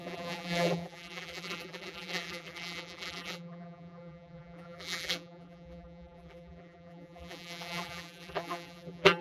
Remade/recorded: remade